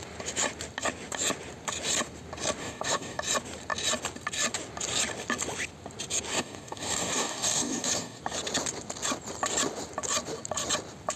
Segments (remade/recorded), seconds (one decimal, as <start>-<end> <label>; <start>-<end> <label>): 0.0-2.6 recorded; 2.6-3.2 remade; 3.2-6.3 recorded; 6.3-8.2 remade; 8.2-11.2 recorded